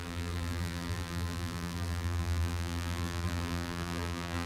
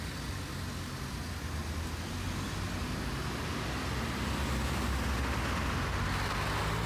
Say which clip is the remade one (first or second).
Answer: first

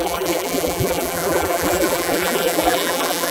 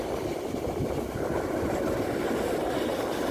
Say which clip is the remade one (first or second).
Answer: first